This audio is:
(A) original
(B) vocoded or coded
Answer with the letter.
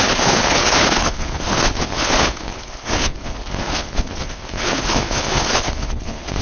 B